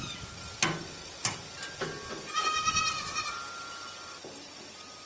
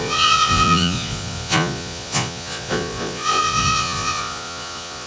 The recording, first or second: first